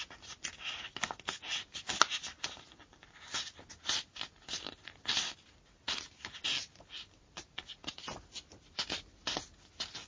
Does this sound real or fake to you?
real